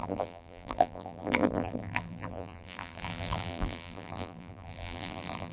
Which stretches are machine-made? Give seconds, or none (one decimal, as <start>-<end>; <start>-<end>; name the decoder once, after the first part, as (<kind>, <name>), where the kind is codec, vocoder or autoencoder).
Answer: 0.0-5.5 (vocoder, BigVGAN v2)